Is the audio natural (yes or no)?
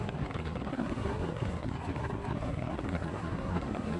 no